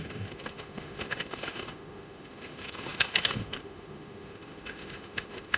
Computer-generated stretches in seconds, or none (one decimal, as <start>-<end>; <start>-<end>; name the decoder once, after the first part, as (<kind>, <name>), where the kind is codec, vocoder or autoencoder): 0.0-5.6 (autoencoder, DAC-VAE)